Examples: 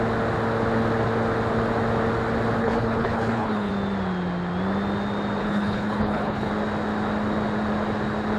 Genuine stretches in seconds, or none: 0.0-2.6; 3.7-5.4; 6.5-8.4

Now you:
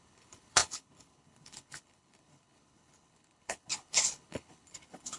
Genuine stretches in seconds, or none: none

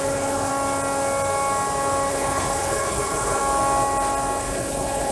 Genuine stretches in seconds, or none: 0.5-2.1; 3.4-4.4

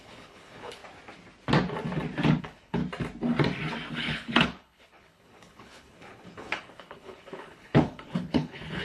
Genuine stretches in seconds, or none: 0.8-2.4; 2.8-3.9

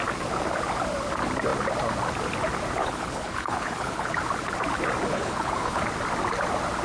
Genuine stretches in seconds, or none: 0.0-2.8; 4.2-5.1; 5.8-6.8

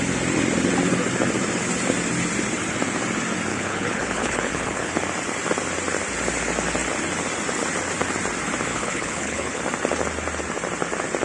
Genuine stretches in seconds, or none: 0.0-3.5; 4.9-8.7; 9.6-11.2

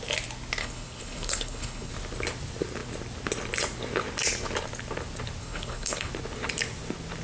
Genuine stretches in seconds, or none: 0.0-0.6; 1.9-5.4; 6.1-7.2

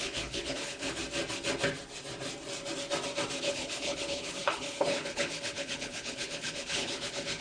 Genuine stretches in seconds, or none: 1.0-3.4